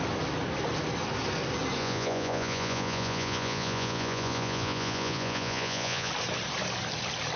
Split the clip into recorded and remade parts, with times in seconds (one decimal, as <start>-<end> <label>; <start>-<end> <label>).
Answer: 0.0-1.8 recorded; 1.8-6.1 remade; 6.1-7.4 recorded